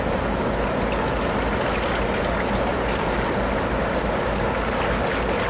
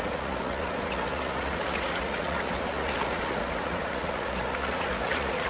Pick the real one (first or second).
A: first